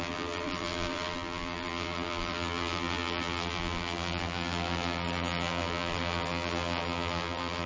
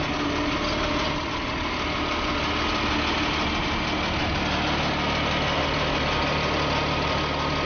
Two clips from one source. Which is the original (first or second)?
second